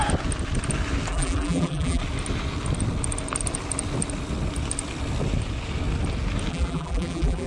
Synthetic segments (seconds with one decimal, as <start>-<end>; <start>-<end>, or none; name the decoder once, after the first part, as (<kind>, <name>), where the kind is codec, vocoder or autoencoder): 1.1-2.0 (vocoder, BigVGAN v2); 6.5-7.5